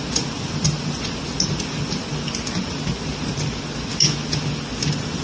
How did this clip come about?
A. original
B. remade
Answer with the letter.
A